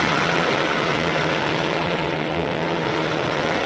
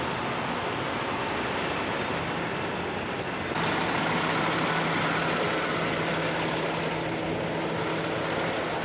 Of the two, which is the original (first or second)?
second